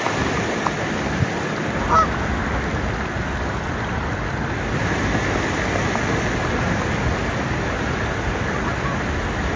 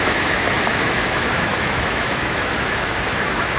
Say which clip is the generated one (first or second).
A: second